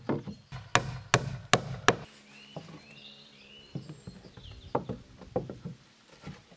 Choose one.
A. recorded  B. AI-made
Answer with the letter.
A